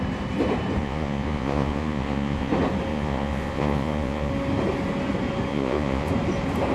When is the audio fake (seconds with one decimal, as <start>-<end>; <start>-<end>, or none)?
0.8-2.5; 2.9-4.3; 5.5-6.1